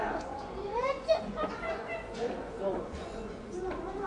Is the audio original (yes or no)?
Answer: no